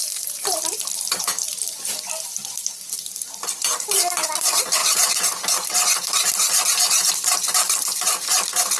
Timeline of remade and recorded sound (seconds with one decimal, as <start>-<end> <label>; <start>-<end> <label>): 0.0-4.8 remade; 4.8-7.1 recorded; 7.1-8.8 remade